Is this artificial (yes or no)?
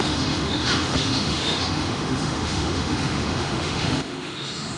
yes